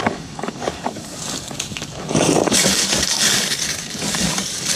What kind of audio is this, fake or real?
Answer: fake